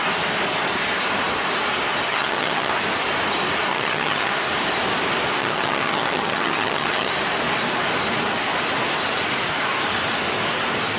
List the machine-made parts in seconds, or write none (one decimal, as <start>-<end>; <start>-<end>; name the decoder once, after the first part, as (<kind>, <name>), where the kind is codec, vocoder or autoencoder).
2.1-2.7 (vocoder, HiFi-GAN); 3.7-4.3; 5.4-7.1